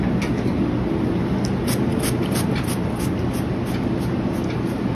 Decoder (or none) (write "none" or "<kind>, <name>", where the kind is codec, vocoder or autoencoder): none